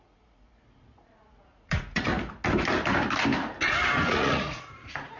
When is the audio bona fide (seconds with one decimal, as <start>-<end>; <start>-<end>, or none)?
2.1-4.1